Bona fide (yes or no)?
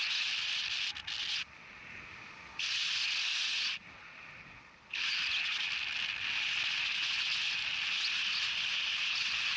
yes